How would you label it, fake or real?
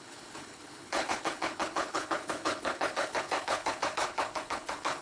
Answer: fake